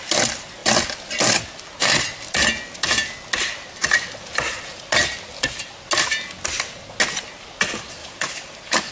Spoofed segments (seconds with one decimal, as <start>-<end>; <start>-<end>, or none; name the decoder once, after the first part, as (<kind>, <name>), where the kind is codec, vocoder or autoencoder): 8.0-8.9 (vocoder, BigVGAN v2)